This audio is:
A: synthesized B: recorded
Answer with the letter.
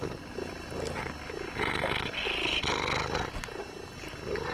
B